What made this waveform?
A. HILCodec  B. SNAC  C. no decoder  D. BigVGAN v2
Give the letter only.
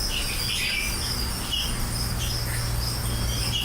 C